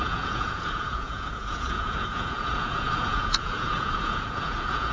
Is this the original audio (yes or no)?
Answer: no